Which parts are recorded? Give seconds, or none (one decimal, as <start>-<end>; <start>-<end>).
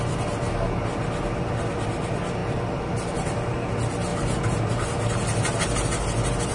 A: 0.0-6.5